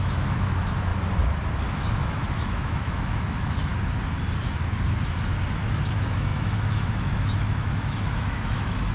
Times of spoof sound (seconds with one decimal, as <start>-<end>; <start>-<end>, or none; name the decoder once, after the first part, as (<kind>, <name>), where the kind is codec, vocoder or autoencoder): 0.0-0.9 (autoencoder, DAC-VAE); 1.7-3.7; 5.6-8.9